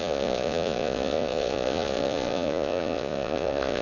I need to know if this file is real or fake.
fake